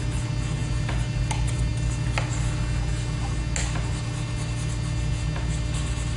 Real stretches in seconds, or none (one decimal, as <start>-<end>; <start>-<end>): 0.0-6.2